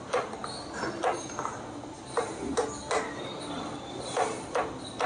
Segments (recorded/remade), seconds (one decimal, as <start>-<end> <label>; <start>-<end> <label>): 0.0-5.1 recorded